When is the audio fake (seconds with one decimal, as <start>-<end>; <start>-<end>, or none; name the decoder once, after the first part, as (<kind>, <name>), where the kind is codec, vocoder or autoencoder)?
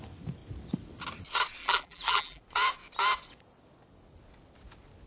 1.6-2.4 (vocoder, BigVGAN v2)